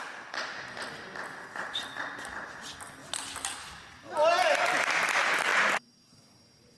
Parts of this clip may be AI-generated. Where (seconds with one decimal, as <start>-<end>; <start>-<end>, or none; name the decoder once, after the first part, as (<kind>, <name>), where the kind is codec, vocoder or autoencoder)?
none